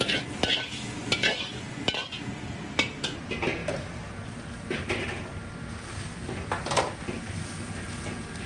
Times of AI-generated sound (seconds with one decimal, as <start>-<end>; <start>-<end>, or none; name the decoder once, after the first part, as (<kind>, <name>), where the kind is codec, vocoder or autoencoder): 1.0-1.8 (vocoder, Vocos)